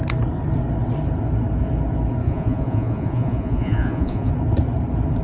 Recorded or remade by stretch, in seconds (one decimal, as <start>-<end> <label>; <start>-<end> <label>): 0.0-2.2 recorded; 2.2-4.3 remade; 4.3-5.2 recorded